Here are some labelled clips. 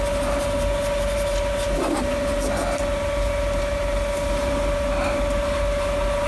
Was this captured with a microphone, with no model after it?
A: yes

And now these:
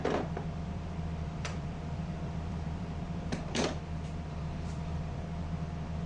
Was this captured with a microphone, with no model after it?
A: no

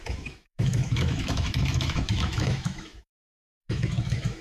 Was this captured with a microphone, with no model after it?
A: no